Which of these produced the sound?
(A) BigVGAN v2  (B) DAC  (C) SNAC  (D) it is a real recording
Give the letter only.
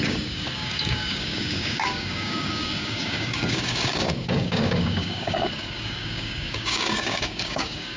B